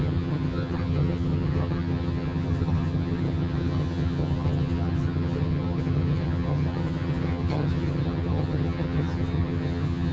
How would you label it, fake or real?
fake